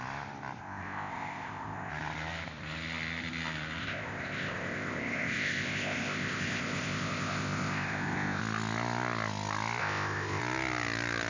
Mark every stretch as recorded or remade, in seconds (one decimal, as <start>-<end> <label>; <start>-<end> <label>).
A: 0.0-0.6 recorded; 0.6-1.9 remade; 1.9-3.8 recorded; 3.8-8.4 remade; 8.4-9.8 recorded; 9.8-10.4 remade; 10.4-11.3 recorded